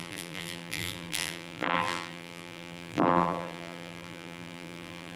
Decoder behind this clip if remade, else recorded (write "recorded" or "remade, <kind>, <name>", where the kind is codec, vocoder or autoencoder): remade, vocoder, BigVGAN v2